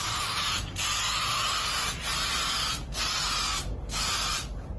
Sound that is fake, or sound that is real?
real